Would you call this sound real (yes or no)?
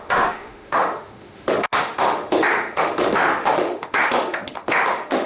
no